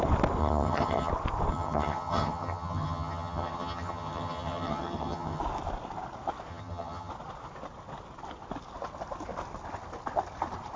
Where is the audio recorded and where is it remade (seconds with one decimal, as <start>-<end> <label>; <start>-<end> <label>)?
0.0-0.4 recorded; 0.4-1.1 remade; 1.1-1.5 recorded; 1.5-5.4 remade; 5.4-6.5 recorded; 6.5-7.1 remade; 7.1-10.8 recorded